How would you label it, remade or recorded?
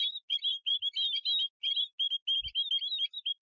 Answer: recorded